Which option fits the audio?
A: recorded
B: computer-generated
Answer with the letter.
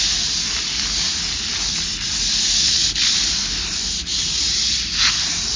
A